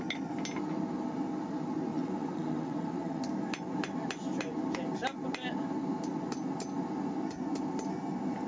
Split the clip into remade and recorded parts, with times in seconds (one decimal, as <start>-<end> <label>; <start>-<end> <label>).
0.0-1.9 recorded; 1.9-3.2 remade; 3.2-8.5 recorded